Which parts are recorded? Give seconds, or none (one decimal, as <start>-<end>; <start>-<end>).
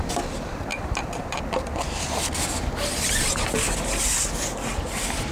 0.0-0.7; 2.6-5.3